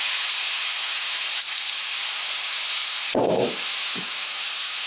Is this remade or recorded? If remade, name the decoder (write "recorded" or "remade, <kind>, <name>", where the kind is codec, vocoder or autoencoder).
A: recorded